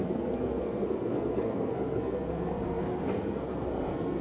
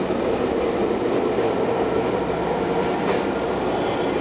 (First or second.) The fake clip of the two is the first